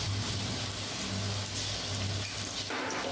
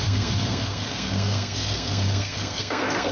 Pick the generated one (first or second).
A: second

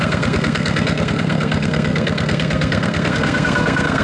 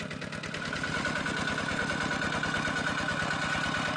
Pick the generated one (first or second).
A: first